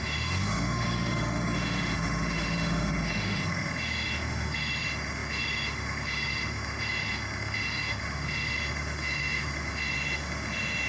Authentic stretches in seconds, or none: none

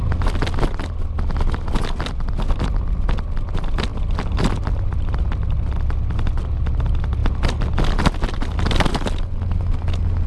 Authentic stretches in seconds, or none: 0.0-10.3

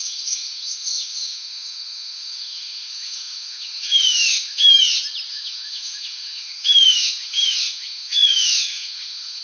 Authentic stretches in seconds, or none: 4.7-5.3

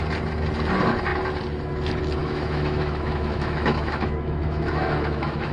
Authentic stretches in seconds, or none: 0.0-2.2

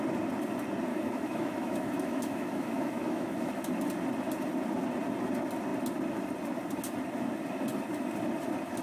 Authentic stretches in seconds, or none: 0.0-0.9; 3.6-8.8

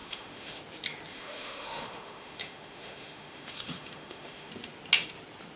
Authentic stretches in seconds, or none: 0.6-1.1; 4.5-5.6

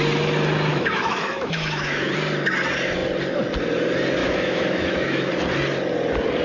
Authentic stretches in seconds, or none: 0.0-0.7; 2.1-4.2; 5.3-6.4